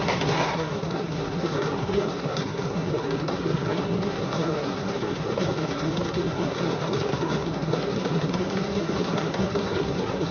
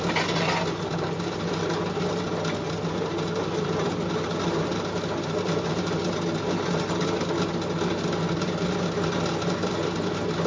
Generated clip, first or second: first